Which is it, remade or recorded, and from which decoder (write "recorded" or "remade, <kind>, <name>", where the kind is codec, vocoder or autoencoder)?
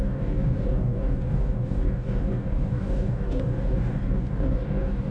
remade, codec, DAC